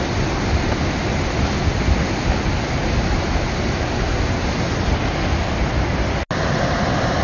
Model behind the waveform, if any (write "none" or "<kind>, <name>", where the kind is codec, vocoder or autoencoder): none